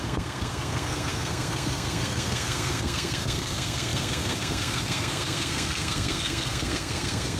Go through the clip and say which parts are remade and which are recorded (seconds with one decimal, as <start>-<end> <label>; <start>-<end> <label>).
0.0-7.4 remade

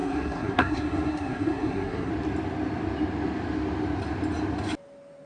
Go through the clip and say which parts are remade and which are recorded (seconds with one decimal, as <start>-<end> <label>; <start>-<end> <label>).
0.0-2.1 remade; 2.1-5.3 recorded

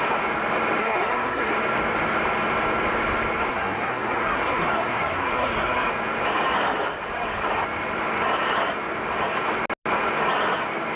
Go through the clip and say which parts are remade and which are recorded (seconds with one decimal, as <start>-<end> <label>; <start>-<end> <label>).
0.0-0.8 recorded; 0.8-1.5 remade; 1.5-3.5 recorded; 3.5-5.9 remade; 5.9-11.0 recorded

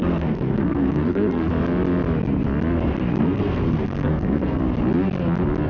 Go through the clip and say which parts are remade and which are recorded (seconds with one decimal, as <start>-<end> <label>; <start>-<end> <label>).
0.0-1.5 remade; 1.5-3.2 recorded; 3.2-4.6 remade; 4.6-5.7 recorded